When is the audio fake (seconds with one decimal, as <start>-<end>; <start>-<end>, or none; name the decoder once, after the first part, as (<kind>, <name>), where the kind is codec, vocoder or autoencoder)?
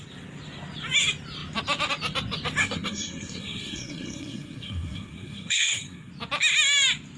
2.6-6.1 (codec, SNAC)